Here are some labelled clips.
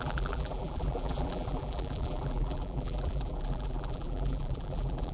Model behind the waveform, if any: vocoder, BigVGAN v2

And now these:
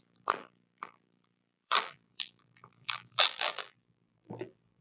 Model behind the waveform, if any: vocoder, BigVGAN v2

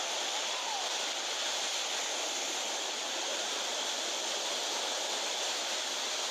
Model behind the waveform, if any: vocoder, BigVGAN v2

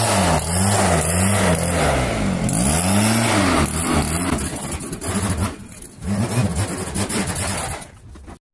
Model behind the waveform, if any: none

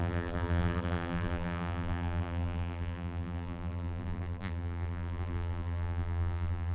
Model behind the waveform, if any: vocoder, BigVGAN v2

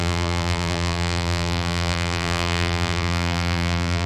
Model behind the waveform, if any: vocoder, BigVGAN v2